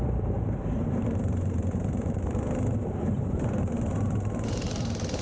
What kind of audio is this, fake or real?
fake